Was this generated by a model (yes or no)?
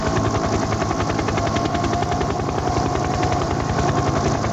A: no